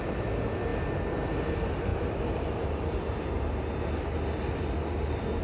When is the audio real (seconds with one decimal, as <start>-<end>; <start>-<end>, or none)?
0.0-5.4